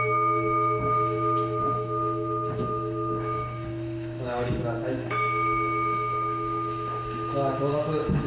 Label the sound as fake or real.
fake